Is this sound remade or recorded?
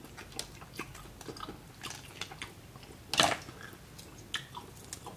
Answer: recorded